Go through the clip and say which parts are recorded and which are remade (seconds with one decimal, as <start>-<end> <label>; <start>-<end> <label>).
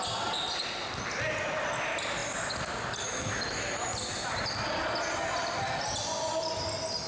0.0-7.1 recorded